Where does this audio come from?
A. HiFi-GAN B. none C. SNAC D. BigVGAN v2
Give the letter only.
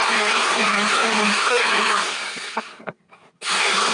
C